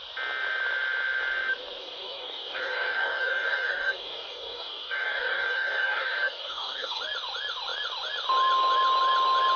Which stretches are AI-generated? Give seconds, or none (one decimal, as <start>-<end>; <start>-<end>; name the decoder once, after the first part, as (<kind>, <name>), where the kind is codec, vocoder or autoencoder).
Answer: 1.8-7.0 (codec, DAC)